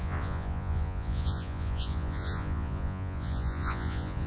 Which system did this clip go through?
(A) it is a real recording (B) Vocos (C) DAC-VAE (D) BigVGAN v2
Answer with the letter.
B